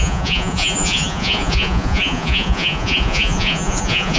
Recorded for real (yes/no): no